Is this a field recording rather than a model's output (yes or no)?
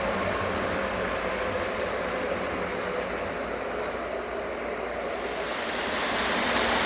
yes